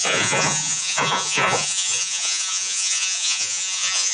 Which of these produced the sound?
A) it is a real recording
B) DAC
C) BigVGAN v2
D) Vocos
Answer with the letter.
D